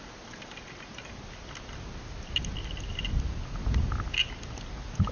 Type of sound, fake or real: real